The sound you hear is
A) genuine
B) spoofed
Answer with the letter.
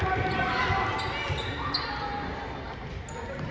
A